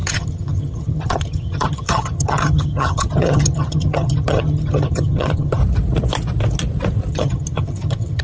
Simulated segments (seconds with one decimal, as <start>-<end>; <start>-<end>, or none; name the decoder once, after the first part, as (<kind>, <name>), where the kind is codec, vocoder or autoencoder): 0.0-5.6 (vocoder, HiFi-GAN); 7.1-8.2